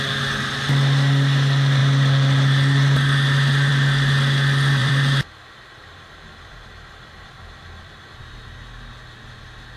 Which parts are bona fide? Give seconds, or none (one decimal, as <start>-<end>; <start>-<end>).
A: 0.0-4.8; 7.4-9.8